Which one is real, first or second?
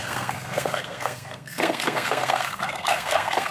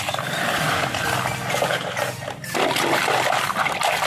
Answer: second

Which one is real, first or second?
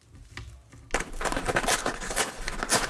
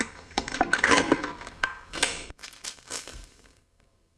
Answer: first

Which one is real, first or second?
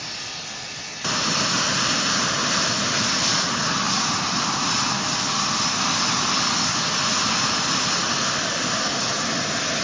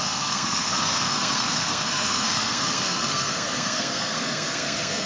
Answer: first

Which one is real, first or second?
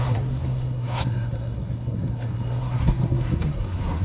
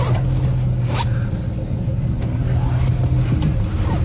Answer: second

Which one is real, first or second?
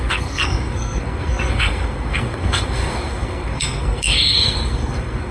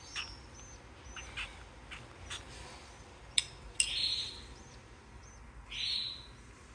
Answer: second